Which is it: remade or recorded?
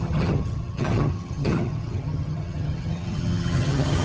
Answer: remade